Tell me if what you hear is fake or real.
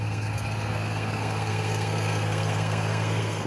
fake